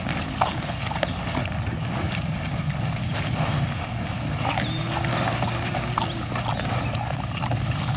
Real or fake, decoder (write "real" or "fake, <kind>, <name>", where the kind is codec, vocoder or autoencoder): real